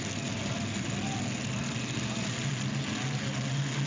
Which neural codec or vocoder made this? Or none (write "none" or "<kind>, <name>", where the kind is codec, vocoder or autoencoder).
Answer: none